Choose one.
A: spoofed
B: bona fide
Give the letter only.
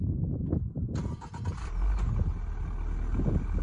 B